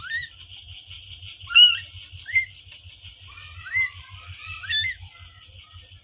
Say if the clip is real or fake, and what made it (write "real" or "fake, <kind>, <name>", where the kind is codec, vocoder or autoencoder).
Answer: real